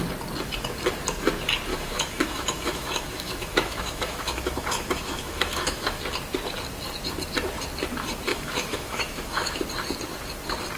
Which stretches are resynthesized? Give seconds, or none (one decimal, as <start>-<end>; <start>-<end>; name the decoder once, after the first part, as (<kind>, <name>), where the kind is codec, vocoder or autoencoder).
1.7-6.0 (autoencoder, DAC-VAE); 8.3-9.6